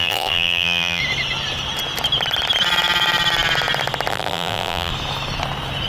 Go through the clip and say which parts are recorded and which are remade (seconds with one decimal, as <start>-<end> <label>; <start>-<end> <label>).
0.0-1.0 remade; 1.0-4.1 recorded; 4.1-4.9 remade; 4.9-5.9 recorded